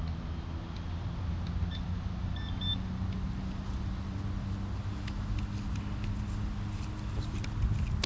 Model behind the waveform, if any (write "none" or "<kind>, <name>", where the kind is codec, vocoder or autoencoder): none